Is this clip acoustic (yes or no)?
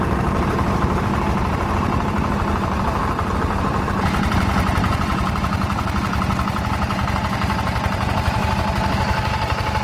yes